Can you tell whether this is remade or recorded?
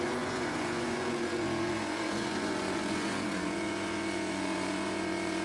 remade